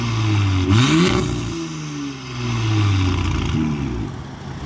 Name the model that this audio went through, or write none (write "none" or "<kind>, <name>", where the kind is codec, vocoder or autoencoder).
none